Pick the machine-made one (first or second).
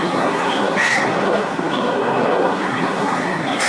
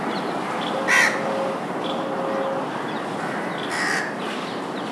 first